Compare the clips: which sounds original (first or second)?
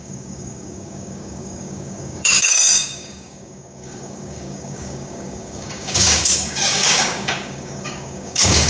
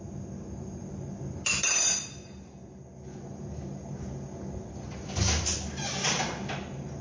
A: second